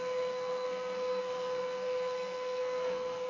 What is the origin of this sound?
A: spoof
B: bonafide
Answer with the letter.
A